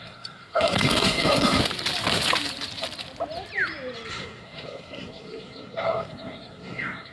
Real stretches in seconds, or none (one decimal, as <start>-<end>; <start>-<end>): 1.6-4.1